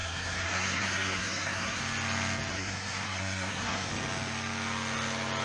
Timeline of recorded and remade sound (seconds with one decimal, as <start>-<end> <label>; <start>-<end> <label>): 0.0-1.8 remade; 1.8-2.5 recorded; 2.5-3.9 remade; 3.9-5.4 recorded